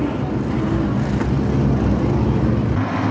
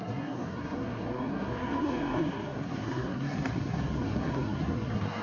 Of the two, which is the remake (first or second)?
second